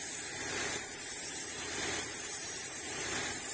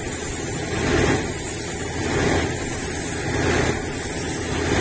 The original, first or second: second